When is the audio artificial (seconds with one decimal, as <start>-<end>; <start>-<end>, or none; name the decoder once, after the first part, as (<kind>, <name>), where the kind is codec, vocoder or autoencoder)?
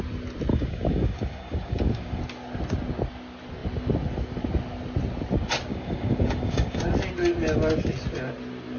0.5-2.2 (codec, DAC); 5.7-6.8